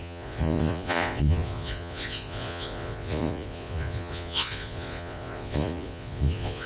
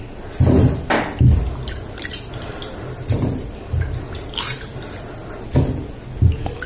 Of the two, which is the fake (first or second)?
first